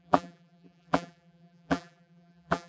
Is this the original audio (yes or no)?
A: no